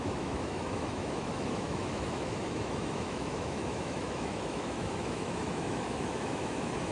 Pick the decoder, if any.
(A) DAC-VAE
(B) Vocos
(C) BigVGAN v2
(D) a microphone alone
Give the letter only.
A